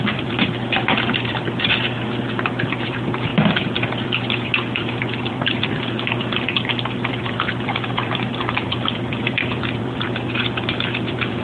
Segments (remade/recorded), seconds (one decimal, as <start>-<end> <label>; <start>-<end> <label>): 0.0-11.4 remade